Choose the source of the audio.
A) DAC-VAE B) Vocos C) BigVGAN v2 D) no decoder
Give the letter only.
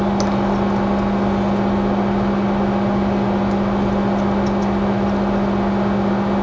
D